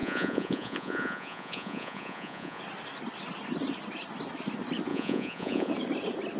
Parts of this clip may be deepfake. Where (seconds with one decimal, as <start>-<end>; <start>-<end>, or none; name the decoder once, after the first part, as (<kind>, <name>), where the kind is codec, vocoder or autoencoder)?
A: 0.0-2.6 (vocoder, Vocos); 4.9-5.7